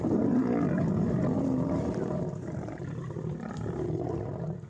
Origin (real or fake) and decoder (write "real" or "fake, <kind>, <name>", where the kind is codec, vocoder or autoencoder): real